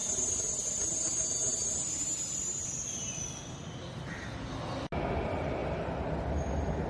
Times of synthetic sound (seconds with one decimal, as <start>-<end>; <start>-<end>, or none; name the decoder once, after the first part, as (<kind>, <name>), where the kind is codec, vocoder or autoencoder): none